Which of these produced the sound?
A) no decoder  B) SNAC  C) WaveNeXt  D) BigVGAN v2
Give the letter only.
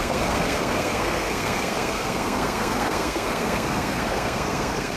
B